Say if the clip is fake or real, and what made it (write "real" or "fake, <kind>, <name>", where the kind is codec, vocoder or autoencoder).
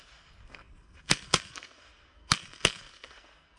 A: fake, codec, SNAC